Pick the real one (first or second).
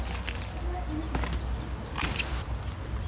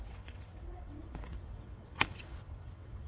first